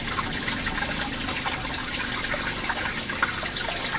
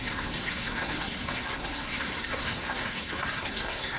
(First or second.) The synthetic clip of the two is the second